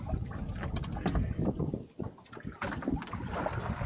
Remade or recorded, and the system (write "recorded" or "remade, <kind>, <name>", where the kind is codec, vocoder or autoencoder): recorded